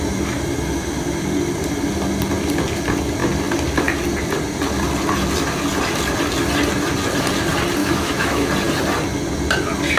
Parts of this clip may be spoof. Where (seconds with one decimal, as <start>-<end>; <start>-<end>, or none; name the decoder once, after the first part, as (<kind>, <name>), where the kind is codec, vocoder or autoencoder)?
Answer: 7.8-8.5 (autoencoder, DAC-VAE)